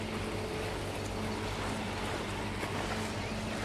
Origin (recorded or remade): recorded